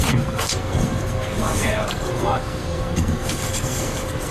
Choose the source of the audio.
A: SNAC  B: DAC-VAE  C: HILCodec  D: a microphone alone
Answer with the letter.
A